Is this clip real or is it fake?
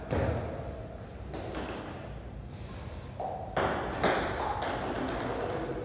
real